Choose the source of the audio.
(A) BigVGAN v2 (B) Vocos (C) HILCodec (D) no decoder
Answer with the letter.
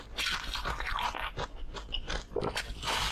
A